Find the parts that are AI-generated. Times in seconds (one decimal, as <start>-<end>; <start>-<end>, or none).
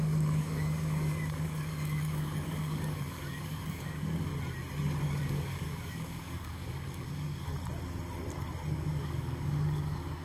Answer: 0.0-4.3; 5.0-7.5; 8.7-10.2